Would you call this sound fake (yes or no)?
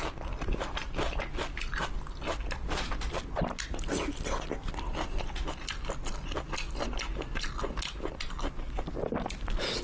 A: no